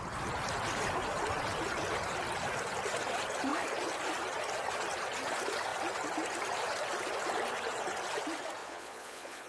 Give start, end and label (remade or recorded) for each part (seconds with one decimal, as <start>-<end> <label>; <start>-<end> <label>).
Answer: 0.0-8.6 recorded; 8.6-9.5 remade